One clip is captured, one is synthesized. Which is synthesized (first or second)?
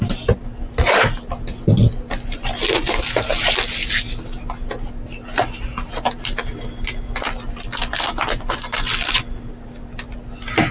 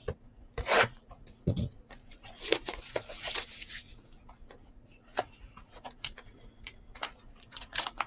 second